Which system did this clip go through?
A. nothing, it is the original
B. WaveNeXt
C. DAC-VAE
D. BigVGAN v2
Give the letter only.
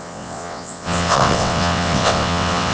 B